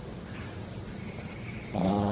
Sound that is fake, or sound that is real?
real